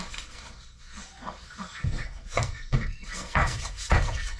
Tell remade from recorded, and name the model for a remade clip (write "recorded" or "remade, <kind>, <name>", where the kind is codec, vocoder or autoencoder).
remade, codec, SNAC